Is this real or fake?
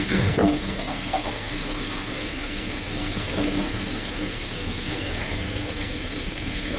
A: fake